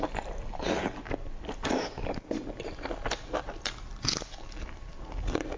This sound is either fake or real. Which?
real